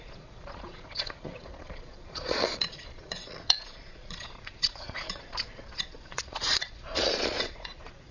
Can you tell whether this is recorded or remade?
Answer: remade